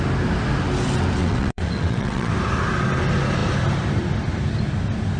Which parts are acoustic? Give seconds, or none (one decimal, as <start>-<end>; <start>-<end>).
0.0-1.2; 2.3-5.2